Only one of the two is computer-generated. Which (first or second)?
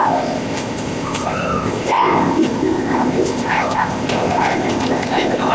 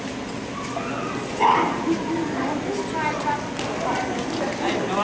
first